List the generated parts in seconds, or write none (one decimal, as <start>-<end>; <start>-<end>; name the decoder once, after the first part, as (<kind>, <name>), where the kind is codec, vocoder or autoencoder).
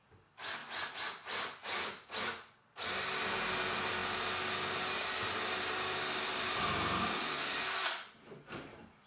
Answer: none